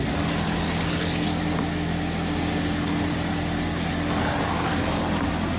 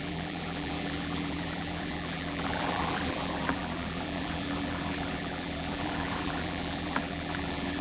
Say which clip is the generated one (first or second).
second